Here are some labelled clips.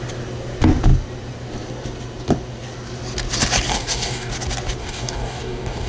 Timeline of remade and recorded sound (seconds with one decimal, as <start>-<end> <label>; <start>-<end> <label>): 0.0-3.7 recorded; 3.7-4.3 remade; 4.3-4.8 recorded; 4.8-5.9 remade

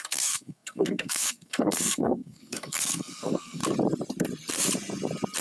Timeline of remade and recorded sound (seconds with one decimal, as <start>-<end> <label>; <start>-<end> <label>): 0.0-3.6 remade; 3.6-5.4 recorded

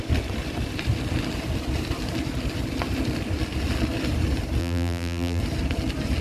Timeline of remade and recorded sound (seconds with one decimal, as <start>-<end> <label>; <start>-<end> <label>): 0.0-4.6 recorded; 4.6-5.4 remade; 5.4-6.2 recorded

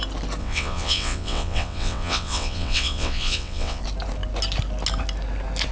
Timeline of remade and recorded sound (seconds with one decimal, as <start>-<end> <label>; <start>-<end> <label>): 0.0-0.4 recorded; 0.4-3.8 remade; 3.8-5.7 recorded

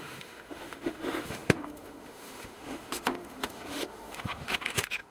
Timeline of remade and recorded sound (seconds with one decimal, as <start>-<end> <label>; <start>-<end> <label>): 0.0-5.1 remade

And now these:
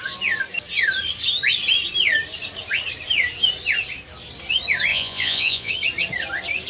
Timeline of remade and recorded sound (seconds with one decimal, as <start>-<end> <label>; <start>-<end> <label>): 0.0-4.9 recorded; 4.9-5.7 remade; 5.7-6.7 recorded

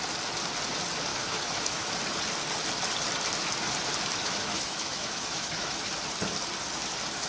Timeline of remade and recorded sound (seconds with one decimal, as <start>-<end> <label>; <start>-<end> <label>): 0.0-1.1 recorded; 1.1-1.9 remade; 1.9-4.2 recorded; 4.2-5.9 remade; 5.9-7.3 recorded

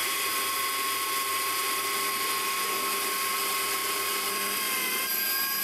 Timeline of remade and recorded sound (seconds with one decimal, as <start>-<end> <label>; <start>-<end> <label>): 0.0-0.6 remade; 0.6-5.6 recorded